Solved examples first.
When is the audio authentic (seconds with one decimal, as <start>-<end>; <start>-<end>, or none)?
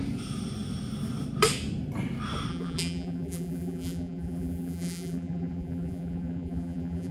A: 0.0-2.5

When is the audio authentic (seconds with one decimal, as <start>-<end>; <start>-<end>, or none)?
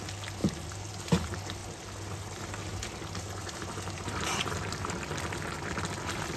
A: 0.0-3.4; 5.0-6.4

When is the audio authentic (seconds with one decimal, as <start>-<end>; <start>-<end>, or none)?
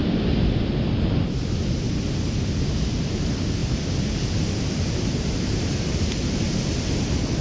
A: 0.6-3.6; 6.0-7.4